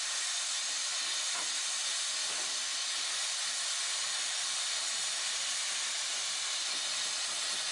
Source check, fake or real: real